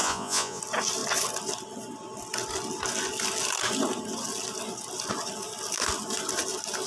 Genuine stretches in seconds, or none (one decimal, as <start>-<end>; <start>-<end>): 0.6-6.9